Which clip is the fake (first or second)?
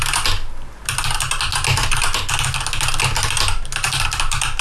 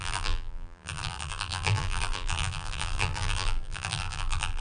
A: second